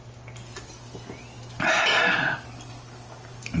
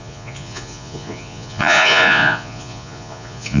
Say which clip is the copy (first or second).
second